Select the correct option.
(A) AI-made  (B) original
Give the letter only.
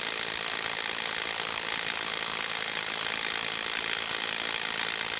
B